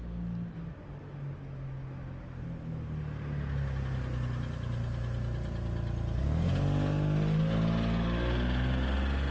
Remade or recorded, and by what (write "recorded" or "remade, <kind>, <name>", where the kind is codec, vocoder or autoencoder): recorded